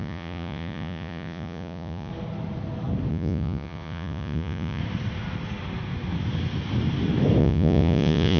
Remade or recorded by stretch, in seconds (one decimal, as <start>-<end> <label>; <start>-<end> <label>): 0.0-2.1 remade; 2.1-3.1 recorded; 3.1-4.8 remade; 4.8-7.4 recorded; 7.4-8.4 remade